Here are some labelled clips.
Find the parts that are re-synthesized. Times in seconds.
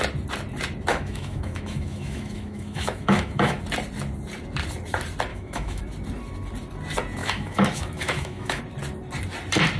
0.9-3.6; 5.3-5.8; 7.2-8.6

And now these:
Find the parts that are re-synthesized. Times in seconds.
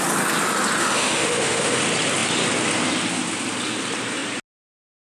0.8-1.8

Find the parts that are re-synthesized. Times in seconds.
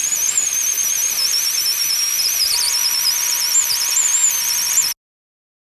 none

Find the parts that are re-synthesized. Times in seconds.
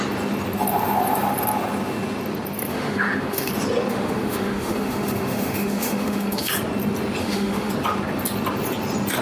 2.7-3.5; 3.9-6.5; 7.2-7.7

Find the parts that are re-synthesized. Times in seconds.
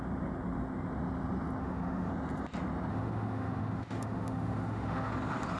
1.6-2.1; 2.9-5.1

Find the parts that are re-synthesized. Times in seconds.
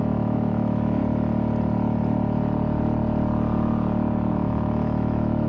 0.0-1.0; 4.3-5.5